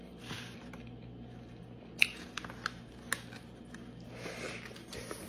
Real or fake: real